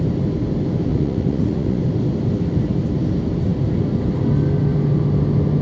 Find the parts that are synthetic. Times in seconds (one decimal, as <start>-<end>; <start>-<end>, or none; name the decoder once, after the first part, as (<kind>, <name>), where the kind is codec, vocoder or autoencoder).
0.9-1.8 (vocoder, Vocos)